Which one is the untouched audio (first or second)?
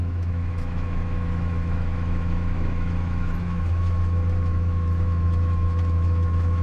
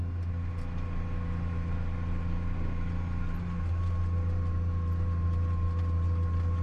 second